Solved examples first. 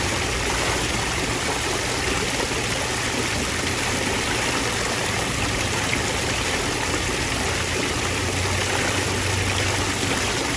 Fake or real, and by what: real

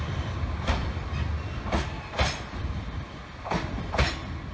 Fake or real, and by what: real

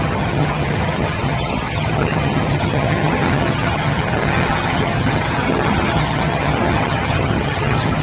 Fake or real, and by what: fake, vocoder, HiFi-GAN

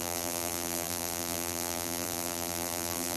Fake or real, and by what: fake, vocoder, BigVGAN v2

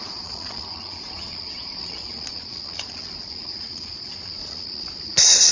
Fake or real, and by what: fake, vocoder, Vocos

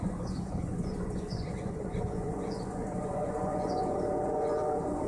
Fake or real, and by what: fake, vocoder, Vocos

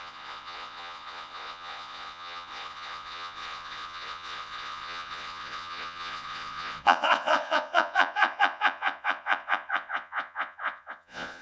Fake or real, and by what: fake, vocoder, Vocos